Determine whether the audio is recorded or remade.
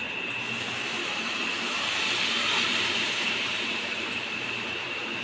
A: remade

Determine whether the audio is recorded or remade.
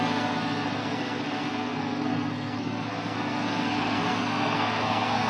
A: remade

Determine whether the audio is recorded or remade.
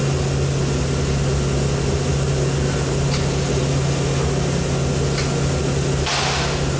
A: recorded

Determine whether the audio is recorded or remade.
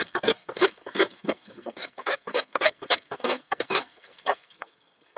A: remade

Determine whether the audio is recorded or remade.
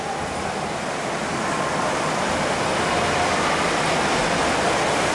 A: recorded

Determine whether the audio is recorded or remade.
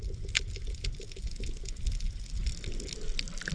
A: recorded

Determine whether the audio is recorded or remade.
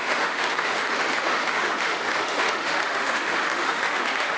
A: remade